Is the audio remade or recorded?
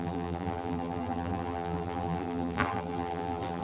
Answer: remade